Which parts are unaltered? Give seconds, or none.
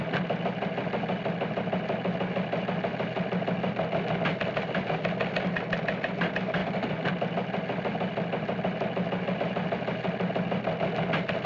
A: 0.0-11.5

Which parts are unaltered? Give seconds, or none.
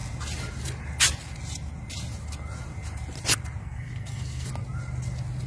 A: 0.0-3.6; 4.5-5.5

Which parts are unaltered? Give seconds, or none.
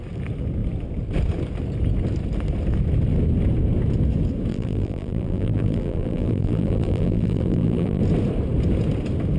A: 0.0-4.5; 8.0-9.4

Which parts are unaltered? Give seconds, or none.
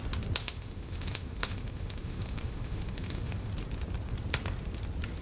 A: 0.0-0.4; 3.5-5.2